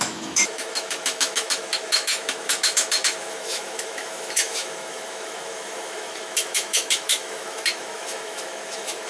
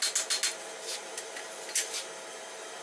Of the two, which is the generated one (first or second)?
first